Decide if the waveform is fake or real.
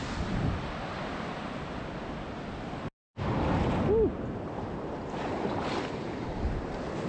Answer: real